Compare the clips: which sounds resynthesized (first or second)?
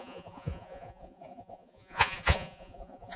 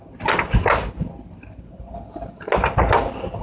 first